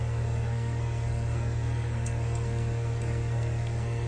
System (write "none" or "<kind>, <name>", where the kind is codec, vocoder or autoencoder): codec, SNAC